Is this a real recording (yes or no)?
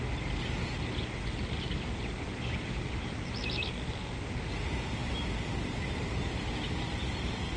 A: yes